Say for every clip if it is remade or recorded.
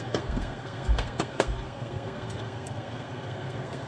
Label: remade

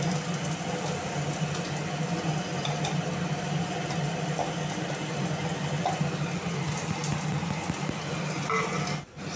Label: recorded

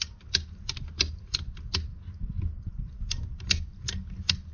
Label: recorded